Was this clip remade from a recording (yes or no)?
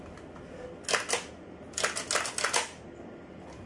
no